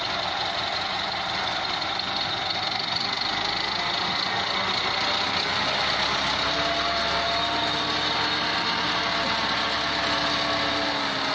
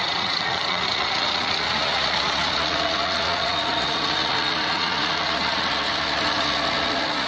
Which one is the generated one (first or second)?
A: second